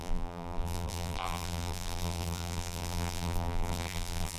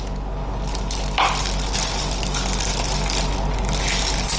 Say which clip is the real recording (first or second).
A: second